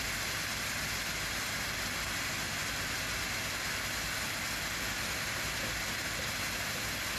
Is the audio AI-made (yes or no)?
no